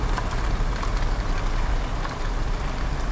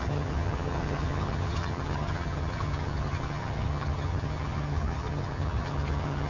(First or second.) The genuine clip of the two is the first